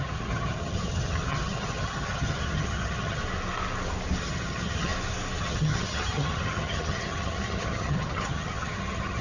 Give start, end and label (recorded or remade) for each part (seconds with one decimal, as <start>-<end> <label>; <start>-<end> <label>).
0.0-3.2 remade; 3.2-4.2 recorded; 4.2-4.9 remade; 4.9-5.4 recorded; 5.4-9.2 remade